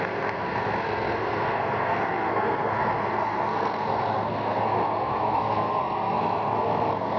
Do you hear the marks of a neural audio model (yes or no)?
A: yes